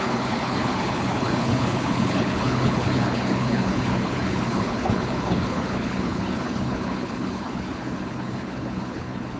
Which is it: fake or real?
fake